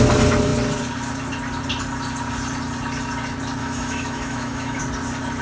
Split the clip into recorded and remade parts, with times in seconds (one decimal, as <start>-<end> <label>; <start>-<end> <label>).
0.0-3.6 recorded; 3.6-4.8 remade; 4.8-5.4 recorded